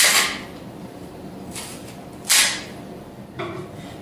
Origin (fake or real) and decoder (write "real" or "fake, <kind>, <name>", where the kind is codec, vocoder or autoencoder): fake, vocoder, BigVGAN v2